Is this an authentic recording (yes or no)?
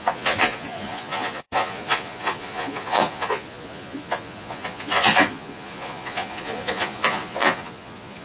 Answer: no